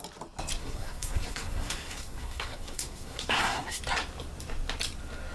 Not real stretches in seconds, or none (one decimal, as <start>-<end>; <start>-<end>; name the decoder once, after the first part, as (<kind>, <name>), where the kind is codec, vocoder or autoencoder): 0.6-3.8 (codec, SNAC)